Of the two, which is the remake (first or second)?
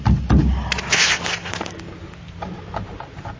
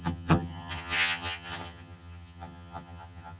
second